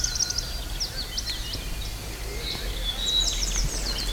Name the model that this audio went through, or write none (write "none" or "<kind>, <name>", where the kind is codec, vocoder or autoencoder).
none